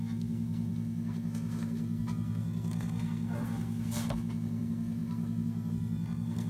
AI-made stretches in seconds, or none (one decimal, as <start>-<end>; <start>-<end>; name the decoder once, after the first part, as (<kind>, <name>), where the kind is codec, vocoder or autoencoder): 0.0-6.5 (codec, SNAC)